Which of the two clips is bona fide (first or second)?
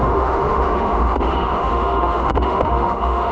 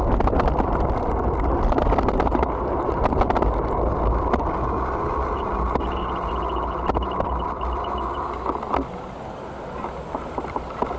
second